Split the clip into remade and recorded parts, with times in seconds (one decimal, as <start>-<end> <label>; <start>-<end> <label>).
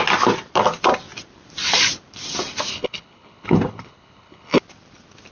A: 0.0-2.7 recorded; 2.7-4.6 remade; 4.6-5.3 recorded